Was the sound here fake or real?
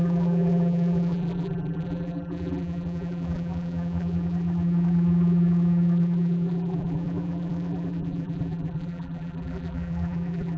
fake